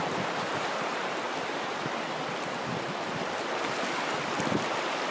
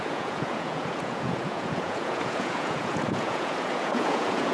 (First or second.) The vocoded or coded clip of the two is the second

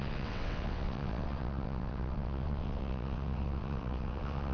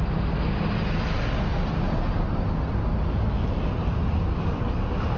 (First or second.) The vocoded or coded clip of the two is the first